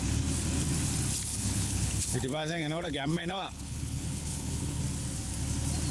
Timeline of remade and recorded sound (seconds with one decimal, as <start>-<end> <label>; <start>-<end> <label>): 0.0-1.3 recorded; 1.3-4.8 remade; 4.8-5.9 recorded